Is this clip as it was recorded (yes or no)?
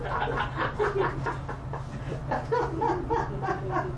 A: yes